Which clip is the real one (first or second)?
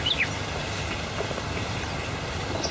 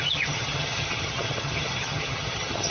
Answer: first